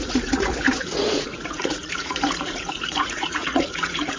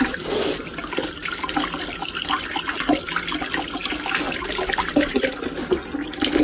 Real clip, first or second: second